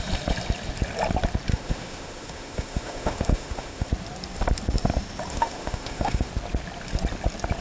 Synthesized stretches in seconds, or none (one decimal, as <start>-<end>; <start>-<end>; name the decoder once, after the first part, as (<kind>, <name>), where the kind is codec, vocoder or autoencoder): 1.5-3.9 (autoencoder, DAC-VAE); 5.3-6.3